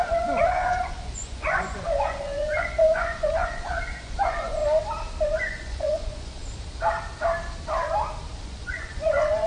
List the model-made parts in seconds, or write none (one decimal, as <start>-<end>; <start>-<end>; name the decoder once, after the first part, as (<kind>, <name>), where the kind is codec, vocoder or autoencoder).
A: 0.0-4.6 (vocoder, Vocos); 5.2-6.4; 8.4-9.5